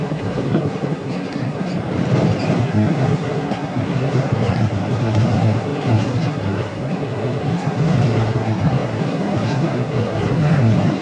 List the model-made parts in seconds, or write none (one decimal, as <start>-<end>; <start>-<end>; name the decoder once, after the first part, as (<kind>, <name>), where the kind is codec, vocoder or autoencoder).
0.0-1.7 (codec, SNAC); 2.6-11.0